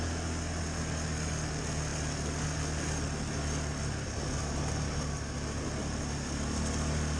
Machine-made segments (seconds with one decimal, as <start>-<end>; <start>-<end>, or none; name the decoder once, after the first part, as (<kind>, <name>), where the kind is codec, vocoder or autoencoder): none